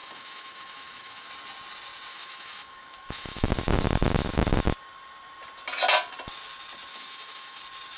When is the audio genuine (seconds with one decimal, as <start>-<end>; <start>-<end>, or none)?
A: 1.3-2.1; 3.5-6.9; 7.6-8.0